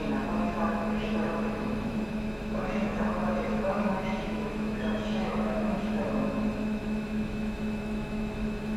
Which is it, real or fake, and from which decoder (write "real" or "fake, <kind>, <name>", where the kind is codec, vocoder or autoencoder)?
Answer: fake, autoencoder, DAC-VAE